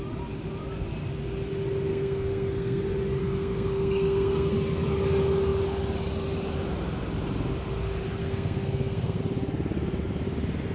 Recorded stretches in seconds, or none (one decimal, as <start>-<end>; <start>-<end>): 0.0-1.9; 2.8-3.2; 4.5-8.2; 9.2-10.7